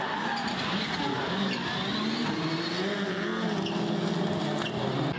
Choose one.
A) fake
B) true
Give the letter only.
B